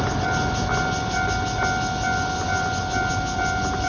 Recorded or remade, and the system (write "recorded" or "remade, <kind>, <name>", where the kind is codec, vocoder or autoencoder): recorded